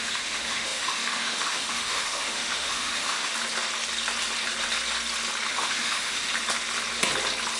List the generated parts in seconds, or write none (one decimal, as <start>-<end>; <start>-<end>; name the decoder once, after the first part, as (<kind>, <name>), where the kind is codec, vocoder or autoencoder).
0.0-3.3 (autoencoder, DAC-VAE); 5.5-6.3